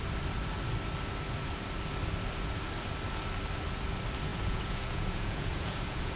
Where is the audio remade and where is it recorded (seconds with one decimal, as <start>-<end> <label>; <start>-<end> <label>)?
0.0-4.3 recorded; 4.3-6.2 remade